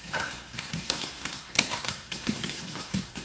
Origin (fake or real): fake